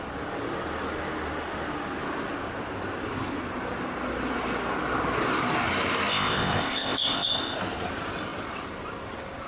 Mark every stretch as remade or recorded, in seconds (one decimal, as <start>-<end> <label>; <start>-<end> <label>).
0.0-6.1 recorded; 6.1-7.6 remade; 7.6-9.5 recorded